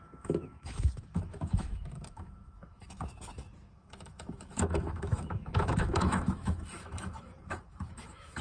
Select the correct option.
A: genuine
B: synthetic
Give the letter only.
B